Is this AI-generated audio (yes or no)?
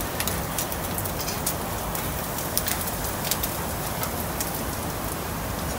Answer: no